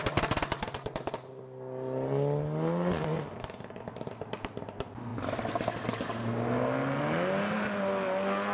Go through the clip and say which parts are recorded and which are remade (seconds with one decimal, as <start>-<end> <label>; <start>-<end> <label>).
0.0-8.5 recorded